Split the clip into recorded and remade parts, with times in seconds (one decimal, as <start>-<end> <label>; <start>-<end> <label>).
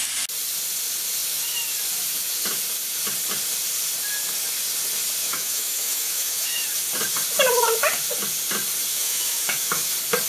0.0-5.2 recorded; 5.2-6.6 remade; 6.6-8.9 recorded; 8.9-9.9 remade; 9.9-10.3 recorded